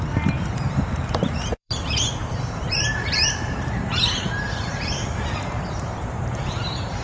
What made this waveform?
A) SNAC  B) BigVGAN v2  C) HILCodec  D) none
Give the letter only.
B